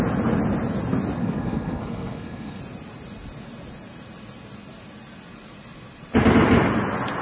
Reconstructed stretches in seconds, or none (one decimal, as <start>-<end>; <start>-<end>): 1.2-2.6